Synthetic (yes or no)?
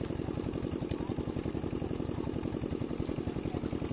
no